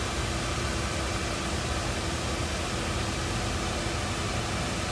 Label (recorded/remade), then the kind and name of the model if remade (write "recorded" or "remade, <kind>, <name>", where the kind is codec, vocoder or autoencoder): recorded